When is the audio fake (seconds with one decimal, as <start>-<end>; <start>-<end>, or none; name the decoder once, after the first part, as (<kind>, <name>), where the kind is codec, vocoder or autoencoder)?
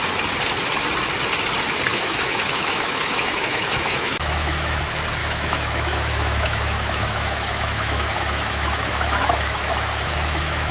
1.9-4.8 (autoencoder, DAC-VAE); 5.2-10.7